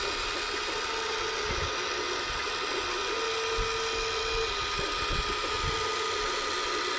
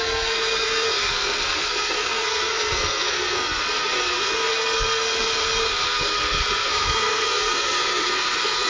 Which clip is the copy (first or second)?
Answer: second